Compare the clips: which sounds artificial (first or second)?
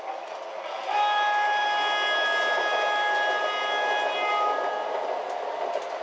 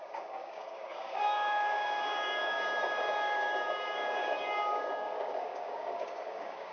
second